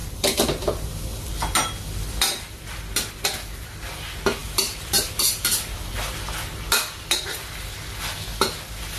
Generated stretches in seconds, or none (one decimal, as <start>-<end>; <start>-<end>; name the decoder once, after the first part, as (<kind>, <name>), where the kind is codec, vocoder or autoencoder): 0.0-1.3 (vocoder, BigVGAN v2); 4.4-6.0